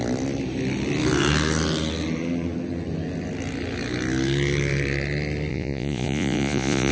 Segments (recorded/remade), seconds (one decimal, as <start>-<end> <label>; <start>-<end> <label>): 0.0-5.5 recorded; 5.5-6.9 remade